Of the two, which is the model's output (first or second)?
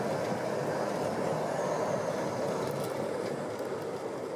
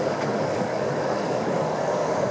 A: second